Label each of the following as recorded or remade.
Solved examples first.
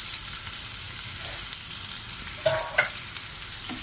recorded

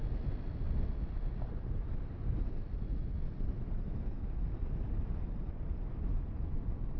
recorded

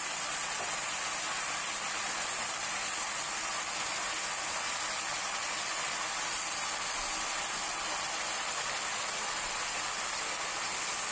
recorded